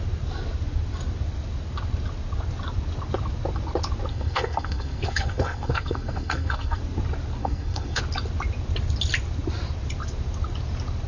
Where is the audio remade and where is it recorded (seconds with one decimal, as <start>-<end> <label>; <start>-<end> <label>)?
0.0-4.1 recorded; 4.1-6.8 remade; 6.8-7.4 recorded; 7.4-8.0 remade; 8.0-11.1 recorded